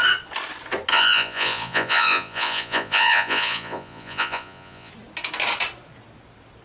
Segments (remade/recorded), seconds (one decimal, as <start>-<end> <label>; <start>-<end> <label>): 0.0-0.9 recorded; 0.9-4.9 remade; 4.9-6.6 recorded